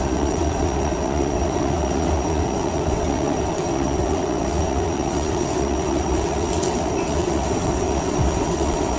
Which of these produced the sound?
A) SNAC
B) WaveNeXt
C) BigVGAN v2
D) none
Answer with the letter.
B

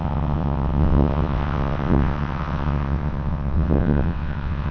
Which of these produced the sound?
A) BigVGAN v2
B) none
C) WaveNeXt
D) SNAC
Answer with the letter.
C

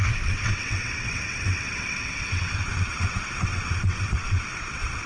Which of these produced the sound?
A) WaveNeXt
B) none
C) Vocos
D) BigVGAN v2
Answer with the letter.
A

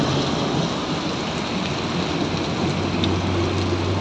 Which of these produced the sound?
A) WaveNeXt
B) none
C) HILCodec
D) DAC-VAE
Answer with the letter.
B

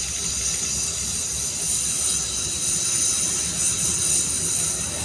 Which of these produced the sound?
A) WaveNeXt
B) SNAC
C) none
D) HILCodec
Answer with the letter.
C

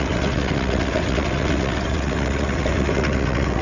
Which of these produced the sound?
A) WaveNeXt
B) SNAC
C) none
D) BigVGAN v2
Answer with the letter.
A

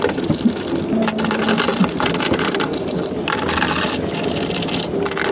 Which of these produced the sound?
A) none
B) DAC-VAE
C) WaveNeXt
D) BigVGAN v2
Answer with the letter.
A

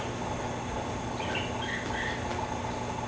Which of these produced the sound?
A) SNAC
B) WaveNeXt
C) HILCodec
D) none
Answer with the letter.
D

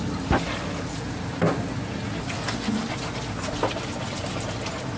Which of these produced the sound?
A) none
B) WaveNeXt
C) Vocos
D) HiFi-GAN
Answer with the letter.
A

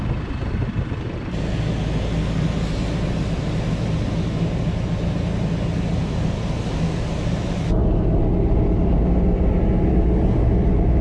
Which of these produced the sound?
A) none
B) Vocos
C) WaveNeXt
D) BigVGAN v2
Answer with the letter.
A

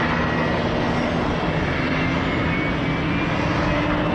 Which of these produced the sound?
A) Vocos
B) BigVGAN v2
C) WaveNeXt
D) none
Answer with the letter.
D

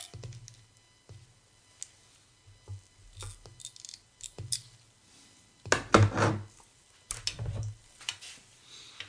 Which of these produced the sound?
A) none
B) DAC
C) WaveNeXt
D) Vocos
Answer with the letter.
A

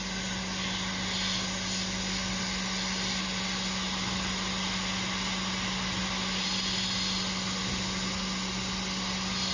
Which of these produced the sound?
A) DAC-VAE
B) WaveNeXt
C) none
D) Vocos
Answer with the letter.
C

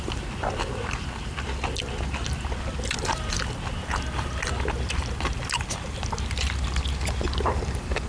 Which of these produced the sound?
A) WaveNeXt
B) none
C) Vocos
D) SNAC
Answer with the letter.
B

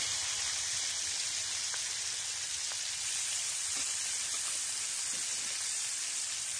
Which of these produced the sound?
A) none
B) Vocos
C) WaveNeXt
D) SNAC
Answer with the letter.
A